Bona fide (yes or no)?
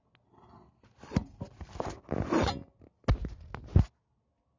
yes